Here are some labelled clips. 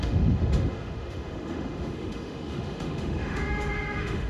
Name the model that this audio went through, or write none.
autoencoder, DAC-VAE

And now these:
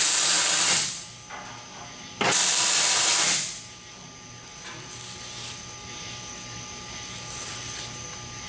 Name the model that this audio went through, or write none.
none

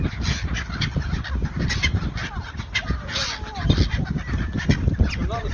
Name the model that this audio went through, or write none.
none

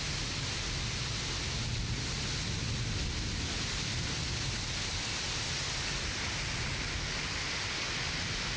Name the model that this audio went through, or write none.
none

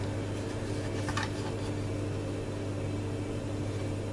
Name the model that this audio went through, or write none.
none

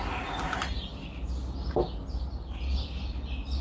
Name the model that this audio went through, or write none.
none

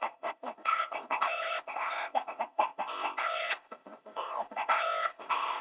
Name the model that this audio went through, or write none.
codec, ZipCodec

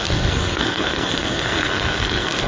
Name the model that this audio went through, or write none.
codec, SNAC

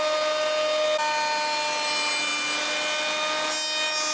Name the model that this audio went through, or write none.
none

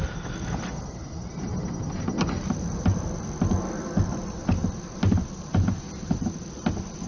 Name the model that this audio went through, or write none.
none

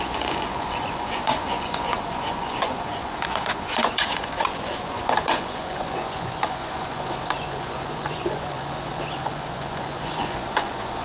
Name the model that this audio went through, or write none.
vocoder, Vocos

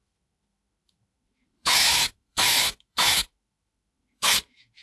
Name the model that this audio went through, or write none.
autoencoder, DAC-VAE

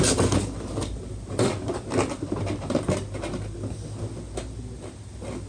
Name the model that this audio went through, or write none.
none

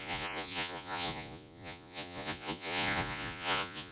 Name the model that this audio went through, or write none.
vocoder, Vocos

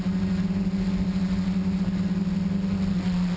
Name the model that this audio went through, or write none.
none